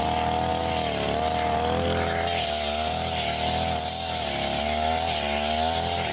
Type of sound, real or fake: real